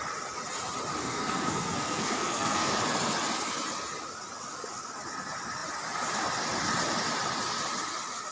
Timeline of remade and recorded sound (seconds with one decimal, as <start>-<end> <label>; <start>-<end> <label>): 0.0-1.0 recorded; 1.0-2.7 remade; 2.7-8.3 recorded

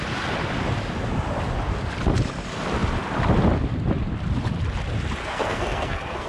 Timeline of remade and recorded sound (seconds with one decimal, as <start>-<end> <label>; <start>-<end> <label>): 0.0-5.2 recorded; 5.2-6.3 remade

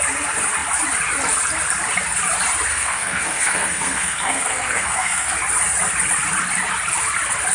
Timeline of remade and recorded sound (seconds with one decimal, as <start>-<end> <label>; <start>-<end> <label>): 0.0-2.7 recorded; 2.7-5.3 remade; 5.3-7.5 recorded

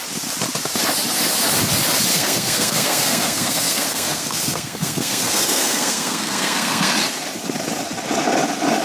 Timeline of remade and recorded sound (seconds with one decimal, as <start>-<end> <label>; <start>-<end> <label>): 0.0-2.1 recorded; 2.1-6.9 remade; 6.9-8.8 recorded

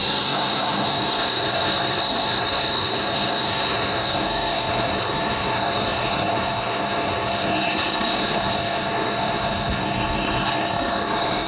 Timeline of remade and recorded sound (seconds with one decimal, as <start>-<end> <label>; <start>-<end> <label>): 0.0-11.5 remade

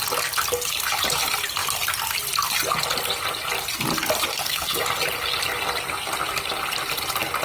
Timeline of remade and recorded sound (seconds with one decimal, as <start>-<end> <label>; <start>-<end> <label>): 0.0-4.3 recorded; 4.3-4.8 remade; 4.8-7.4 recorded